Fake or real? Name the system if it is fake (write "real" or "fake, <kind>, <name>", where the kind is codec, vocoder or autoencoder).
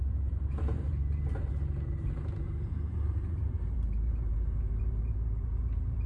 fake, vocoder, BigVGAN v2